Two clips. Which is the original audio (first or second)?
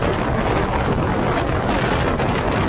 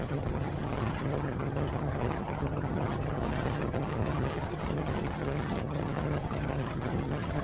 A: first